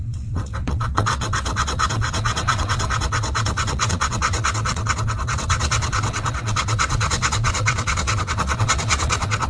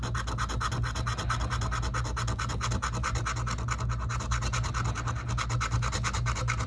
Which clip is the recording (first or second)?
second